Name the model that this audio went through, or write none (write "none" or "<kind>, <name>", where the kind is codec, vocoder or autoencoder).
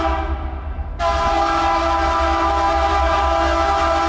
none